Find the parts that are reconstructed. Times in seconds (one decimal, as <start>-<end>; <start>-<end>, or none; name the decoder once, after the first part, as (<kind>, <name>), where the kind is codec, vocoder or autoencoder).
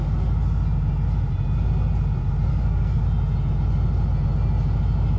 2.5-3.0 (codec, SNAC)